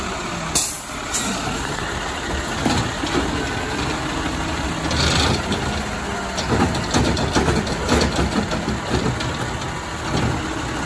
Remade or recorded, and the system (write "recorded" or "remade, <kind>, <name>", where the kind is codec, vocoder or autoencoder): recorded